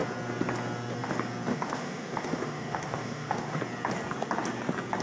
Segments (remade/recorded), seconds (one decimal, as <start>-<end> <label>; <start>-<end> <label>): 0.0-1.5 recorded; 1.5-3.6 remade; 3.6-5.0 recorded